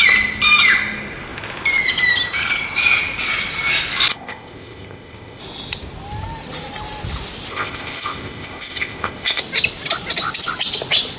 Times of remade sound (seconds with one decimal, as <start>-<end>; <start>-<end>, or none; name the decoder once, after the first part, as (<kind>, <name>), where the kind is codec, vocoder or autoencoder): 4.1-5.4 (codec, ZipCodec); 7.5-9.4